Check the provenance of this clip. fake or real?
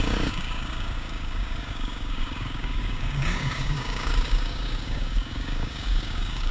fake